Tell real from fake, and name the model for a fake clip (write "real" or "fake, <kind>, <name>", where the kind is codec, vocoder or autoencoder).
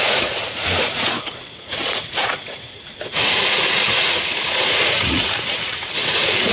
fake, vocoder, Vocos